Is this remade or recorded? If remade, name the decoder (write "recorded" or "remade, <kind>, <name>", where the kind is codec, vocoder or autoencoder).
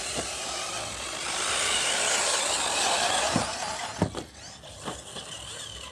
recorded